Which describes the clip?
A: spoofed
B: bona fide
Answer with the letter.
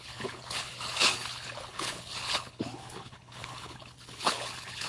A